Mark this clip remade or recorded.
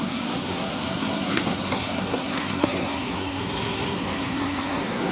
remade